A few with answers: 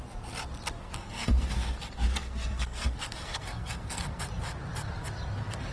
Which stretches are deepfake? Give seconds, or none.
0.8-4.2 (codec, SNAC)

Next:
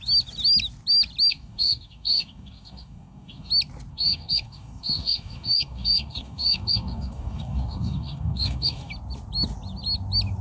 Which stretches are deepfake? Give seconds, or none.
1.3-3.5 (codec, DAC); 3.9-8.9

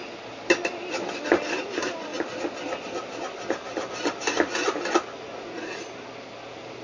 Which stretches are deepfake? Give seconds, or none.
none

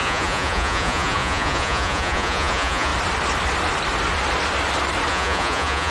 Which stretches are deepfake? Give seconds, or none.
0.0-2.9 (vocoder, Vocos); 5.1-5.9

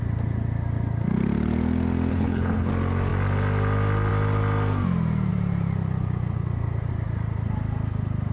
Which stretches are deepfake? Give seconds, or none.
2.1-2.7 (codec, HILCodec)